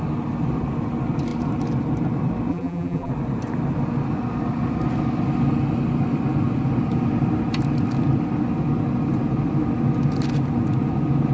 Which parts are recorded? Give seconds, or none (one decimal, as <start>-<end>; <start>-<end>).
0.0-2.5; 3.1-11.3